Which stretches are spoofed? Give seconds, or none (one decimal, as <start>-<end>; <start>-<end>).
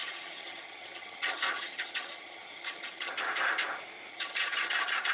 0.0-3.1; 4.1-5.1